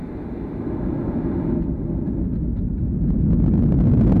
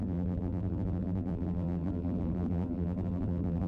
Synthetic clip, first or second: second